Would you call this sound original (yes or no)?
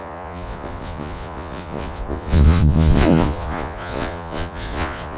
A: no